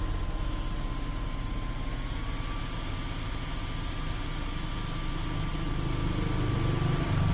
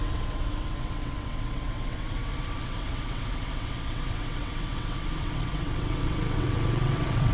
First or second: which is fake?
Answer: second